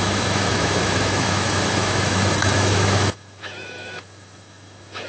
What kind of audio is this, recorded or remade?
remade